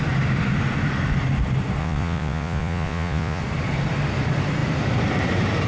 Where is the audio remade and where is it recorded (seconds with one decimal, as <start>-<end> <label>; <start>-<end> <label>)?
0.0-1.8 recorded; 1.8-3.4 remade; 3.4-5.7 recorded